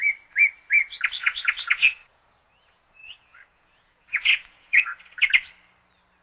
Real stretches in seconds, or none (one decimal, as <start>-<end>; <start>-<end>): 0.0-1.2; 4.9-6.2